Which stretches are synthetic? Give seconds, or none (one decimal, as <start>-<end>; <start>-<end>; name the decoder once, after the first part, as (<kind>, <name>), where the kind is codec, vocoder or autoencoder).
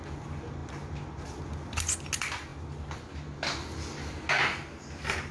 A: none